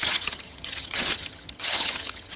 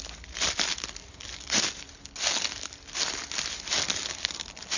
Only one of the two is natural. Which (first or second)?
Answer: second